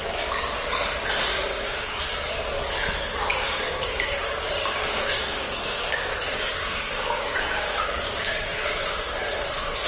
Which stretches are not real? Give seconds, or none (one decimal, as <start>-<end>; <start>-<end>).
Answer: 1.5-2.0; 3.3-8.1